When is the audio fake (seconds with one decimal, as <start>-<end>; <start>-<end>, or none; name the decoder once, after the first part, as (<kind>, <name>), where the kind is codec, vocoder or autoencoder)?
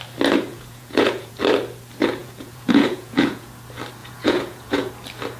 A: 0.5-1.3 (vocoder, Vocos); 2.2-3.5; 4.0-4.9